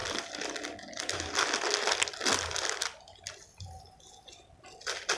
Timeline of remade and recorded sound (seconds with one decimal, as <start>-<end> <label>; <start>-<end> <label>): 0.0-5.2 recorded